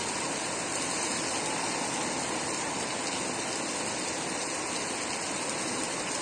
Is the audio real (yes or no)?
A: yes